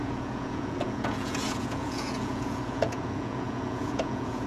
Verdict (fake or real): fake